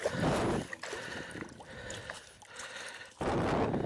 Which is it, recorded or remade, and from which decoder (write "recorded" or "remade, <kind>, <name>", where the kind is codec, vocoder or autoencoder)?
recorded